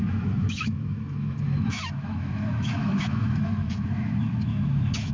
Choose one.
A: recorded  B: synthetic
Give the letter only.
B